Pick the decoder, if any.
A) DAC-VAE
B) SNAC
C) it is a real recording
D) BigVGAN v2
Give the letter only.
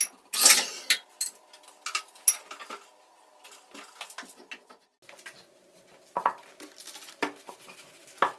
C